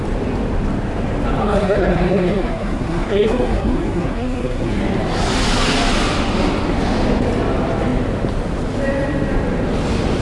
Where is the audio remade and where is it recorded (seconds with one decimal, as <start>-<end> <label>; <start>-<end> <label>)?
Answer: 0.0-1.4 recorded; 1.4-4.8 remade; 4.8-10.2 recorded